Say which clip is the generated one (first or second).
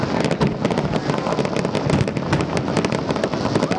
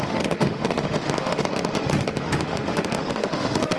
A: second